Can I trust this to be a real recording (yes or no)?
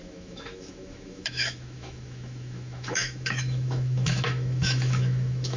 no